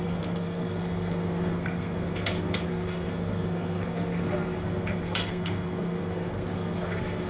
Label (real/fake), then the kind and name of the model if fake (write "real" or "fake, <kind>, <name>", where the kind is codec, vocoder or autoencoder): fake, codec, SNAC